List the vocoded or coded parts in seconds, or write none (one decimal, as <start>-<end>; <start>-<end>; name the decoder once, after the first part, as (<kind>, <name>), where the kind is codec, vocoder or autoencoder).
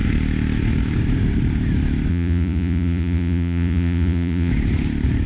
2.1-4.5 (vocoder, Vocos)